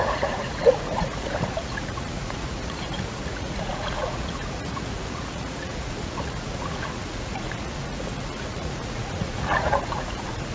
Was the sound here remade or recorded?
remade